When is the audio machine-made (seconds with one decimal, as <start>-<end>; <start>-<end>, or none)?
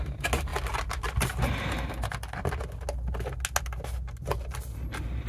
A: none